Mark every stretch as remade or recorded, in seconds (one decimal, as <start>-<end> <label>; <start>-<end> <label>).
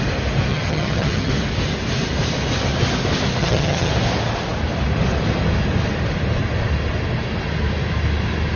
0.0-0.5 recorded; 0.5-1.3 remade; 1.3-3.4 recorded; 3.4-3.9 remade; 3.9-8.6 recorded